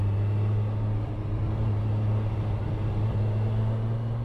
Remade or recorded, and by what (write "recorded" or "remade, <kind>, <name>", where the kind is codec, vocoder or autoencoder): recorded